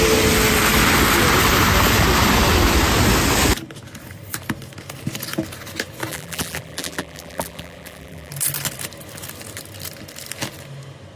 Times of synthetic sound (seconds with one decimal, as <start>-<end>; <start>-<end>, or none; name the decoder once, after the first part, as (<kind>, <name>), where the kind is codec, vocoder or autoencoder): 6.1-8.3 (vocoder, BigVGAN v2)